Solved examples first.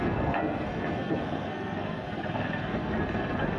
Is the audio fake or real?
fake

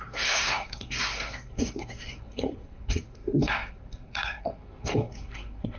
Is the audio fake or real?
fake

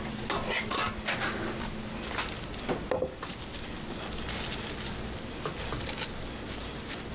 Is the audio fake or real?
real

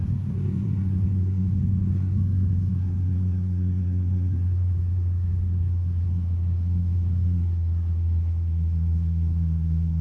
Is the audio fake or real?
fake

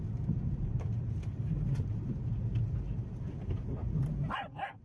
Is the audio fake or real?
real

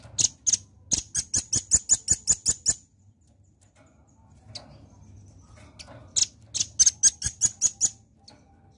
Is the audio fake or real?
real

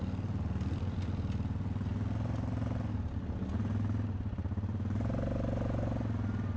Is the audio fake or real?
real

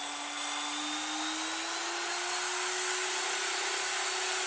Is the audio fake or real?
real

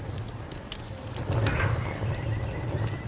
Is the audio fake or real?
real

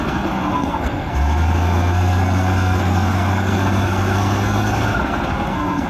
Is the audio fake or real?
fake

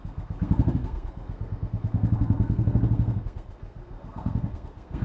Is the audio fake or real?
fake